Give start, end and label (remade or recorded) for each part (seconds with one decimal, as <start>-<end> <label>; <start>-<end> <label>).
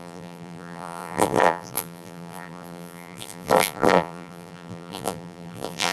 0.0-5.9 remade